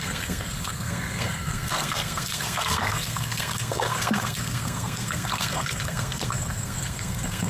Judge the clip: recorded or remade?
remade